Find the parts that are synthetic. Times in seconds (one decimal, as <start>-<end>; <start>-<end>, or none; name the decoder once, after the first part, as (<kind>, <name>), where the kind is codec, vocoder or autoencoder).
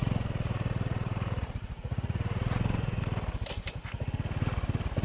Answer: 0.0-3.0 (vocoder, Vocos)